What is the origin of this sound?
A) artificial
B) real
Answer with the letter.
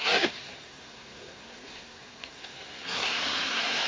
A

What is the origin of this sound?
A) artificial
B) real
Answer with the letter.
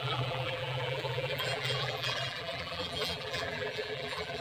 A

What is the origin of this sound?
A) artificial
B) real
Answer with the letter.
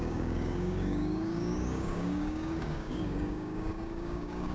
A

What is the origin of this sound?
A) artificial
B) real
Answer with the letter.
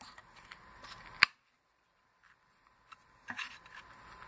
B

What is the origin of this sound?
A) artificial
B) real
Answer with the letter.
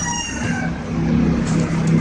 B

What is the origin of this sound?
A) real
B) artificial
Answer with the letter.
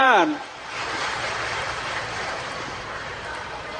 B